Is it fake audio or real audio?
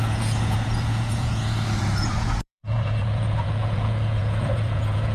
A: fake